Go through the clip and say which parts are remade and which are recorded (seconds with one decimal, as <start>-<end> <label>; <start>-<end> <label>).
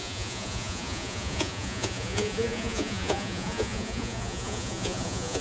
0.0-5.4 remade